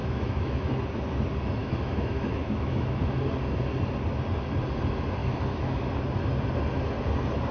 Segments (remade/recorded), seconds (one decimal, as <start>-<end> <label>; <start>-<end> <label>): 0.0-0.6 remade; 0.6-1.6 recorded; 1.6-3.0 remade; 3.0-5.2 recorded; 5.2-5.9 remade; 5.9-7.5 recorded